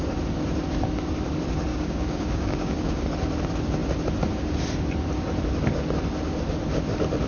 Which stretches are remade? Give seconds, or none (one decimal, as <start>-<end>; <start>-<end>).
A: 1.7-3.0